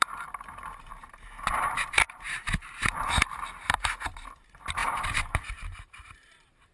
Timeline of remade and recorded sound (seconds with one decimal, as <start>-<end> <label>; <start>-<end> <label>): 0.0-6.7 remade